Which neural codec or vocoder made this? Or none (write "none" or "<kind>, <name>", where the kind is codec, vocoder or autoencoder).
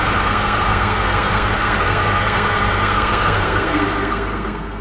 codec, SNAC